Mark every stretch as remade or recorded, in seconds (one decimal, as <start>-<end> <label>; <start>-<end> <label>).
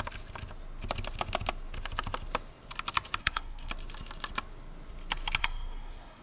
0.0-3.2 recorded; 3.2-3.7 remade; 3.7-5.4 recorded; 5.4-6.2 remade